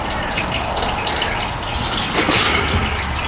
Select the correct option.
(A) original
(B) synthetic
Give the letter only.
A